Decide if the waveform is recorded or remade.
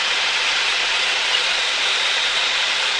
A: remade